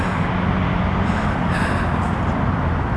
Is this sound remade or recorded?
recorded